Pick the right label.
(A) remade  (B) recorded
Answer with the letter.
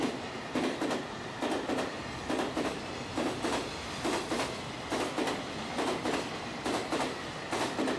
B